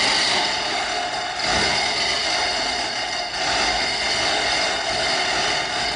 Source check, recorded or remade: recorded